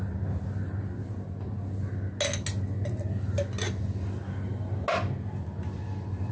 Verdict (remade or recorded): recorded